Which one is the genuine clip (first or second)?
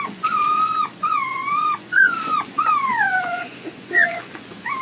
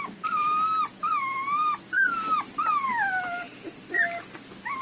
second